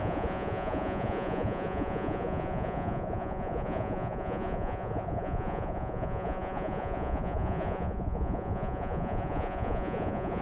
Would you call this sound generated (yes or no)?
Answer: yes